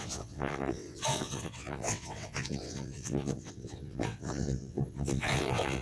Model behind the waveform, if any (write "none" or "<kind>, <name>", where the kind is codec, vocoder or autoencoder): vocoder, WaveNeXt